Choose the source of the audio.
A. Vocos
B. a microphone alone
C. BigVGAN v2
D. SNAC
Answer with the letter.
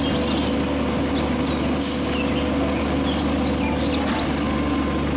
B